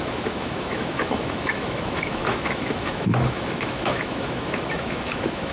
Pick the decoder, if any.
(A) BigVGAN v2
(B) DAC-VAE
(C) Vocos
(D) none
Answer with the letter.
B